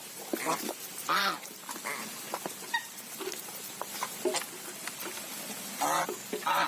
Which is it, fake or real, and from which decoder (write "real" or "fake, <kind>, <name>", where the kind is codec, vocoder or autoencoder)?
real